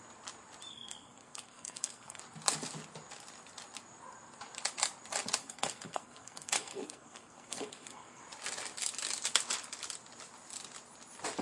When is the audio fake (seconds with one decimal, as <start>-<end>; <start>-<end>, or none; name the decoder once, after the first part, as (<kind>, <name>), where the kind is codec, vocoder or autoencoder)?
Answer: 0.7-2.2 (codec, SNAC); 5.4-8.2